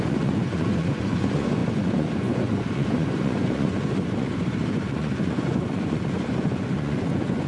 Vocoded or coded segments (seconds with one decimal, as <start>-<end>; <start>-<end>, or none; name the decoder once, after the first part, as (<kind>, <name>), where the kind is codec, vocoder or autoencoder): 0.0-7.5 (vocoder, Vocos)